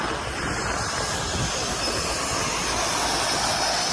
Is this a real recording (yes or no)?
yes